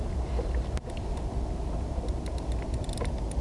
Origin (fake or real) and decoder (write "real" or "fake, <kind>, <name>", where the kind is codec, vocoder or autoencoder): real